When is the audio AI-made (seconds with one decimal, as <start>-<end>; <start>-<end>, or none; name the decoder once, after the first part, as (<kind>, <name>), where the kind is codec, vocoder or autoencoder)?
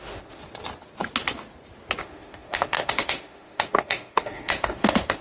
0.0-0.4 (autoencoder, DAC-VAE); 2.0-5.2